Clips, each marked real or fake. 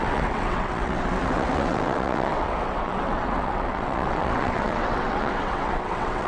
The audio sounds fake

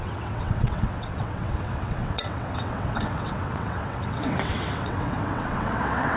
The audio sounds fake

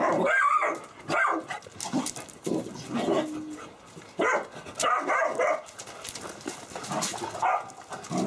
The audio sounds real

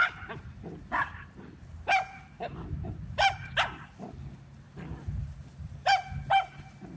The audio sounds real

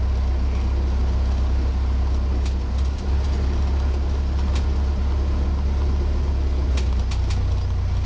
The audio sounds real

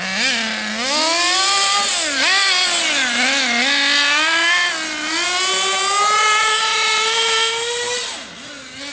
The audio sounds real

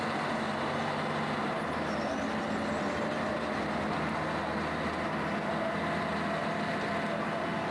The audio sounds real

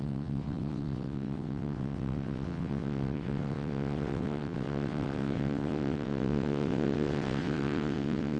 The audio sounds fake